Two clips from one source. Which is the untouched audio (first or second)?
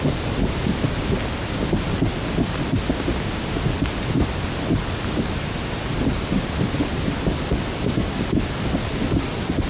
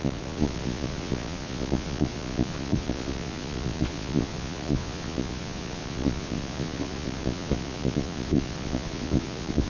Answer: first